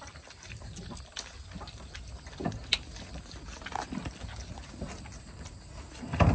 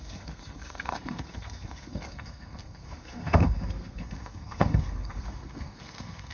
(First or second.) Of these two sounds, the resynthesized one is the second